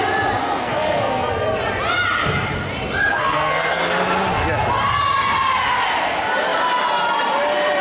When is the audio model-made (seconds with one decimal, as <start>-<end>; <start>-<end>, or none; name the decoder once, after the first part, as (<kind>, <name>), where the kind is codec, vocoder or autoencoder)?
0.4-1.3 (codec, SNAC); 3.1-3.8